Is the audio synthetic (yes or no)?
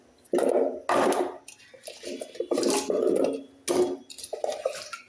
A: no